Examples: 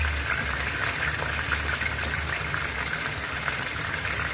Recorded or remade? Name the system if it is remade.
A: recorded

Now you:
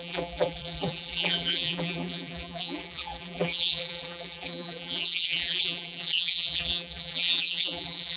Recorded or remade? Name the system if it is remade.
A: remade, vocoder, BigVGAN v2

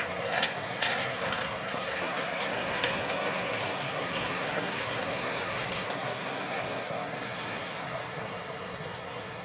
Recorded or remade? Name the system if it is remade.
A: remade, codec, SNAC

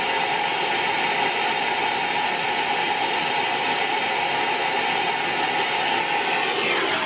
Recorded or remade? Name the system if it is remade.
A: recorded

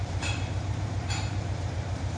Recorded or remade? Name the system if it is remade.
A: remade, vocoder, BigVGAN v2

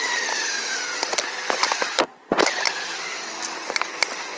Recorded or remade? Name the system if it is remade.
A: recorded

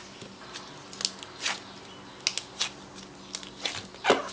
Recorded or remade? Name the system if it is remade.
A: recorded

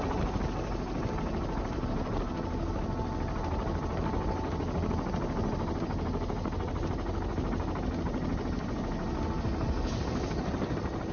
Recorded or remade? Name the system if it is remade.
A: recorded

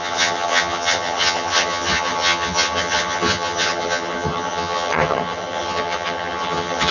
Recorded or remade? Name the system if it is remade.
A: remade, vocoder, HiFi-GAN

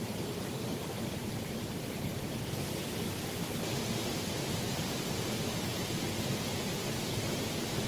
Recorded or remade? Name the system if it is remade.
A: recorded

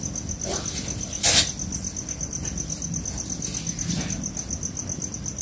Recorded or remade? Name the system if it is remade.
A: recorded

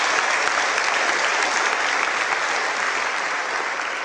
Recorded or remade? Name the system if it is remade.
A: recorded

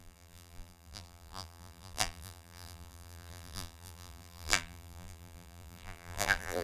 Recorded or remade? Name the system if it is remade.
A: remade, vocoder, BigVGAN v2